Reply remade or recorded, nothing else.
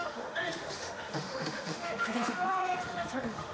remade